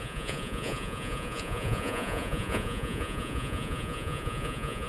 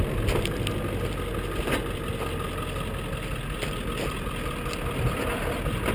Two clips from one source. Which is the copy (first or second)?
first